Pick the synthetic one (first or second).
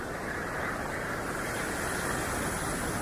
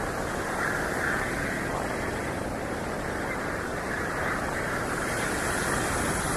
second